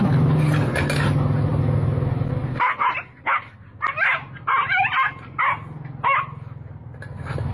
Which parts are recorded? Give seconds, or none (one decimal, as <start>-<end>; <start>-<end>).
0.0-7.5